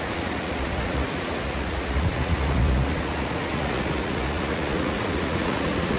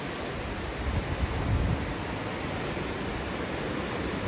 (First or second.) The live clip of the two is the second